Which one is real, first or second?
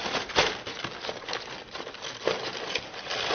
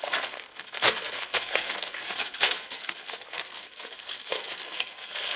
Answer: first